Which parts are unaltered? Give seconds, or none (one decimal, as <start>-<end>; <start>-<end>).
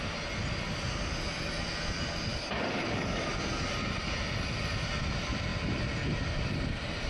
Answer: 0.0-2.3; 3.3-7.1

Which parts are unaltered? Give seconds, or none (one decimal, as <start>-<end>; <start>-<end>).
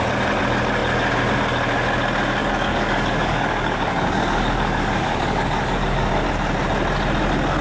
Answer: 0.0-2.4; 6.1-7.6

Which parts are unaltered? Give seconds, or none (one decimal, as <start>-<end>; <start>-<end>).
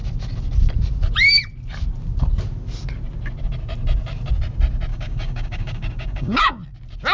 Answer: 0.0-4.9; 6.5-7.1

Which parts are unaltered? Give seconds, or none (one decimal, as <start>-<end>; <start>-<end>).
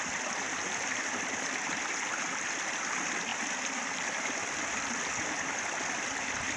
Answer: 0.0-6.6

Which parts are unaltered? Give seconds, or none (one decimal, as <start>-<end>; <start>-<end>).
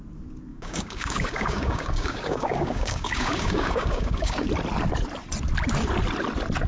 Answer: 0.0-0.5; 4.5-6.7